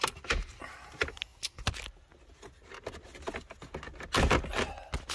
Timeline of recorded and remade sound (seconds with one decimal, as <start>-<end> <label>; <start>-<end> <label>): 0.0-5.1 recorded